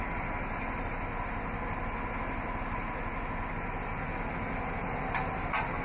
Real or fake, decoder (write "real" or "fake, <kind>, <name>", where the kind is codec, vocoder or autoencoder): real